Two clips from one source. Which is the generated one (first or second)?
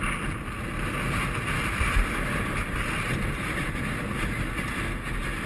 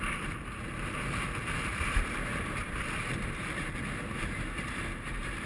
second